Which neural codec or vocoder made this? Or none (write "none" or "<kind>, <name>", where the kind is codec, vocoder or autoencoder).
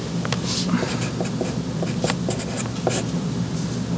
none